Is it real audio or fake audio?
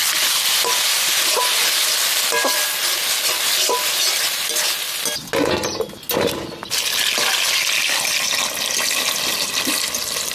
real